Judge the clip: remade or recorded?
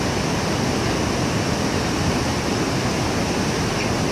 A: recorded